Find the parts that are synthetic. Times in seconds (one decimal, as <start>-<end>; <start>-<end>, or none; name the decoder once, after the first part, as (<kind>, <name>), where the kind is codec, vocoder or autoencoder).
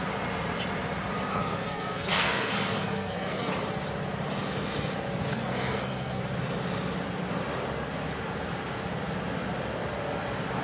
1.3-3.5 (codec, SNAC); 5.3-6.2